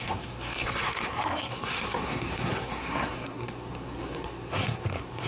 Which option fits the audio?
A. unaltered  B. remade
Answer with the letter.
B